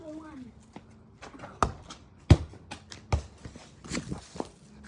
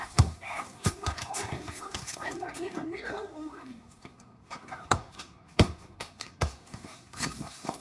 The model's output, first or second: second